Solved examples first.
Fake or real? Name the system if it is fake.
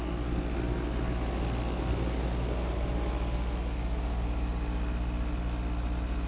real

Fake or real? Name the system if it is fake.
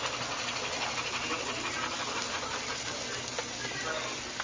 real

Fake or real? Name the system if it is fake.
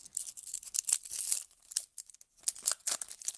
real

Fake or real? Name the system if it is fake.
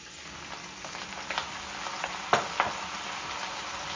real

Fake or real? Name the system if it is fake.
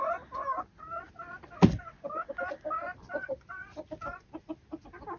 real